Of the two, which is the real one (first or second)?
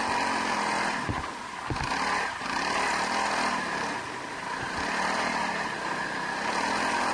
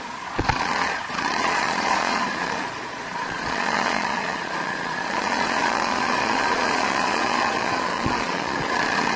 first